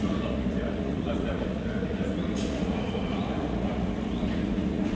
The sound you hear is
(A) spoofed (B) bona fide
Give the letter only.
A